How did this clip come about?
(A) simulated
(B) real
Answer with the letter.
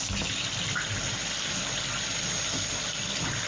B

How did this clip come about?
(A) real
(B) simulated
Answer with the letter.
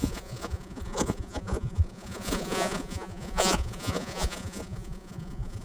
B